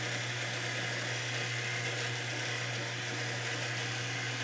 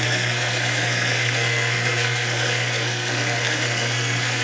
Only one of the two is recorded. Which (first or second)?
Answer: first